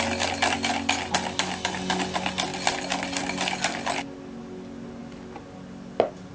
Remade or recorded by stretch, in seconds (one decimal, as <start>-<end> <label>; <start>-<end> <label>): 0.0-6.3 recorded